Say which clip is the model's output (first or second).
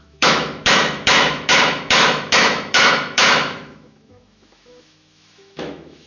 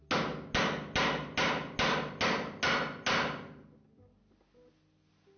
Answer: first